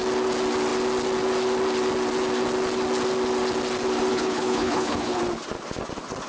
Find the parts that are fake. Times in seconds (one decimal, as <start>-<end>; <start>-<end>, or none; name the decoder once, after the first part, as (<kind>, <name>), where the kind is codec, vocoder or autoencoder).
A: 4.1-5.2 (codec, HILCodec)